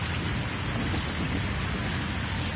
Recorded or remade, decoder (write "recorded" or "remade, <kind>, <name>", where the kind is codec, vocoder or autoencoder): recorded